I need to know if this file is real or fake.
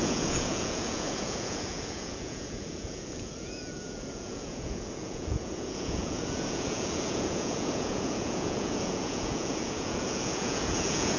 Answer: fake